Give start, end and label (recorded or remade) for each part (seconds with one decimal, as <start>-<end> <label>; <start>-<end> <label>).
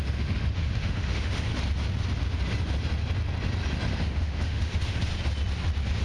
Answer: 0.0-1.5 remade; 1.5-4.0 recorded; 4.0-5.1 remade; 5.1-6.0 recorded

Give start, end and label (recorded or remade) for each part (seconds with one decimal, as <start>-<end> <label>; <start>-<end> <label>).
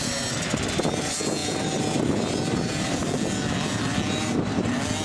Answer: 0.0-5.0 recorded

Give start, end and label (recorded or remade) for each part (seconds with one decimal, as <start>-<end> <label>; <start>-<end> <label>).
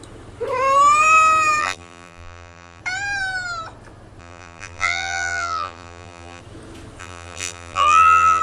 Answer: 0.0-1.6 recorded; 1.6-2.8 remade; 2.8-4.2 recorded; 4.2-6.4 remade; 6.4-7.0 recorded; 7.0-8.4 remade